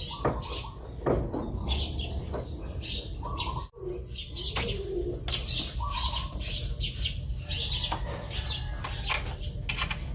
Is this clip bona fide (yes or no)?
yes